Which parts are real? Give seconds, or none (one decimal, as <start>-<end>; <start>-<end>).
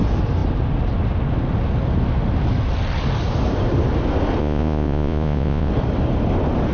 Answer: 0.0-4.4; 5.7-6.7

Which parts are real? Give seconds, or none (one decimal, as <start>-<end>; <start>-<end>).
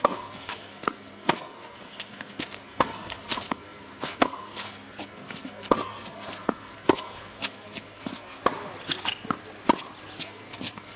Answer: 8.4-10.2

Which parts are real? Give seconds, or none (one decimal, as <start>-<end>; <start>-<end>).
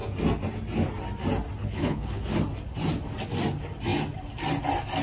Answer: 0.0-1.6; 2.2-5.0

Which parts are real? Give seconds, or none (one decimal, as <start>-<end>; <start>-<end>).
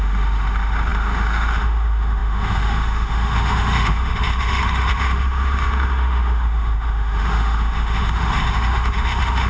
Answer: none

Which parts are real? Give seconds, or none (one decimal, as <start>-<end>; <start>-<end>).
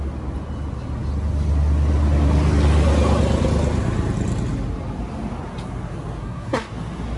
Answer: 0.0-6.2; 6.7-7.2